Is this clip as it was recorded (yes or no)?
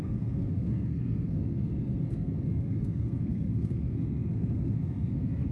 no